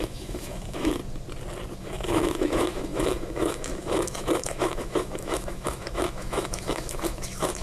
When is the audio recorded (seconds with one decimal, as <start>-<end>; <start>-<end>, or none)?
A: 1.0-1.8